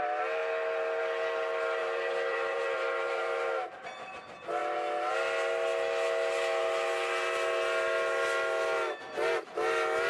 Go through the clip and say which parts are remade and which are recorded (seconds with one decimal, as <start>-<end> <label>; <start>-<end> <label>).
0.0-1.8 recorded; 1.8-3.8 remade; 3.8-10.1 recorded